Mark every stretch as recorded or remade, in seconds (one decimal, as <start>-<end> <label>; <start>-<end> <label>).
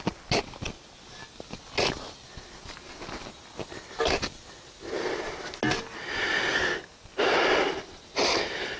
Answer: 0.0-8.8 recorded